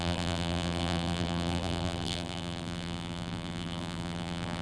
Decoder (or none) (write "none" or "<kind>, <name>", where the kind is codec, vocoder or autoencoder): vocoder, BigVGAN v2